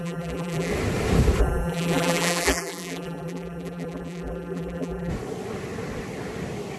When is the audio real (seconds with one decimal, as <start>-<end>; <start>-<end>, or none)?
0.7-1.4; 5.1-6.8